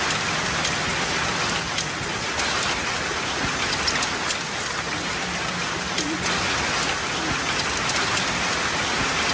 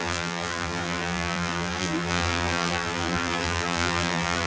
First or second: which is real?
first